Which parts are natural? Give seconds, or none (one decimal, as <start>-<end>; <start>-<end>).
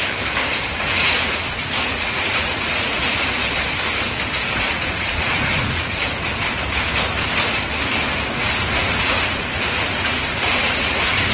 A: 0.0-0.8; 3.4-4.6; 6.0-8.3